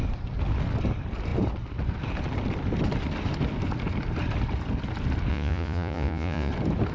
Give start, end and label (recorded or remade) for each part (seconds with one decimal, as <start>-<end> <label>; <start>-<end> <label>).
0.0-5.3 recorded; 5.3-6.5 remade; 6.5-6.9 recorded